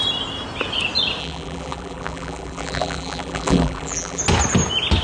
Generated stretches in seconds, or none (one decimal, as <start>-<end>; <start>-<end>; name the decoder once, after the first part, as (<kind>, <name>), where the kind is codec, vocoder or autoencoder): 1.2-4.2 (vocoder, BigVGAN v2)